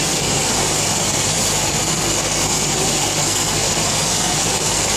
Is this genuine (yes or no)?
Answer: no